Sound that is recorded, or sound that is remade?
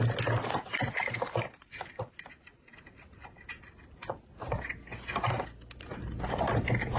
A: recorded